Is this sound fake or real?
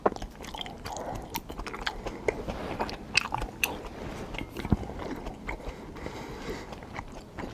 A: real